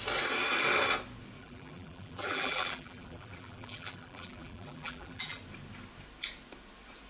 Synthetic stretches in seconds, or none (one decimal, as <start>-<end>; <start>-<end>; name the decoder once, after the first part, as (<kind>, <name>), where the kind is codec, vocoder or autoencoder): 1.4-5.4 (vocoder, BigVGAN v2)